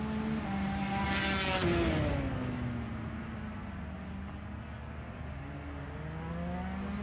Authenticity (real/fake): real